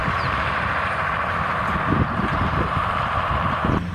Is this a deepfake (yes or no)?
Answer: yes